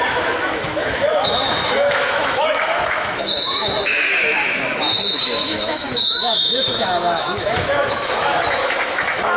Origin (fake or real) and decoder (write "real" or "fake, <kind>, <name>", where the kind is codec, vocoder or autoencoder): fake, autoencoder, DAC-VAE